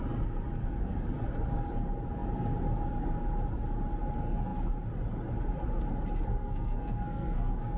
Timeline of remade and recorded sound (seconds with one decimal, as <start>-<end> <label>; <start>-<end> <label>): 0.0-6.3 recorded; 6.3-7.8 remade